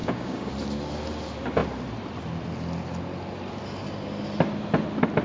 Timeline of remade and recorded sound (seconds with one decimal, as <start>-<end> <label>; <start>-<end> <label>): 0.0-0.5 remade; 0.5-5.2 recorded